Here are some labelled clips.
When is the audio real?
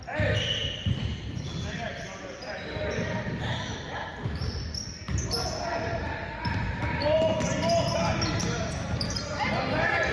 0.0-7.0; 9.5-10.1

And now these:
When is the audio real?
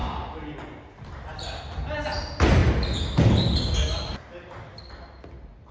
0.0-5.7